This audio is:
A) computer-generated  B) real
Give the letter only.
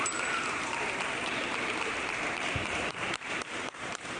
A